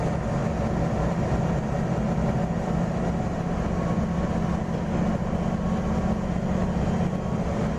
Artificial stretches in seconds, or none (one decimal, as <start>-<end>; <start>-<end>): none